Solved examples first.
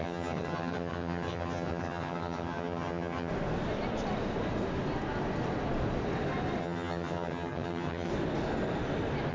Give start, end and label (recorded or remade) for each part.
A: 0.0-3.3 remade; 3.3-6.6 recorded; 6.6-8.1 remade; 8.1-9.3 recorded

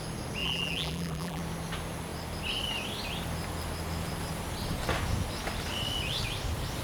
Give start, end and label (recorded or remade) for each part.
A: 0.0-0.4 recorded; 0.4-1.4 remade; 1.4-6.8 recorded

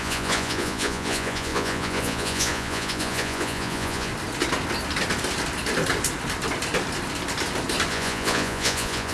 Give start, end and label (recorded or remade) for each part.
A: 0.0-4.1 remade; 4.1-7.9 recorded; 7.9-9.1 remade

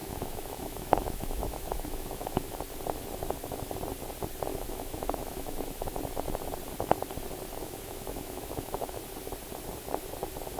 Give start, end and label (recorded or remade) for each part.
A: 0.0-2.6 remade; 2.6-4.5 recorded; 4.5-6.0 remade; 6.0-7.6 recorded; 7.6-9.0 remade; 9.0-10.6 recorded

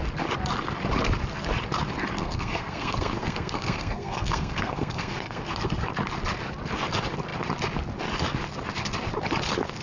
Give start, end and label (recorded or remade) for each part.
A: 0.0-2.2 recorded; 2.2-5.9 remade; 5.9-9.8 recorded